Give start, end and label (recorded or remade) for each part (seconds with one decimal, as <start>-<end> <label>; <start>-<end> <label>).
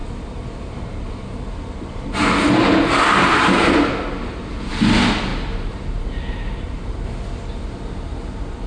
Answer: 0.0-5.3 recorded; 5.3-6.8 remade; 6.8-8.7 recorded